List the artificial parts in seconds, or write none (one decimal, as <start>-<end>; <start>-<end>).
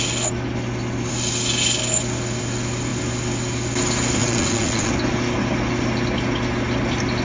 4.2-4.9